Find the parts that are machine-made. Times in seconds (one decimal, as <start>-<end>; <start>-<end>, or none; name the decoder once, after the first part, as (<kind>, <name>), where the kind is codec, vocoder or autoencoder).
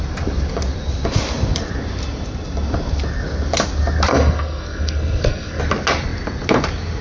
4.1-5.6 (codec, SNAC)